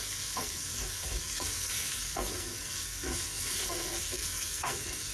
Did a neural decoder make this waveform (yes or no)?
yes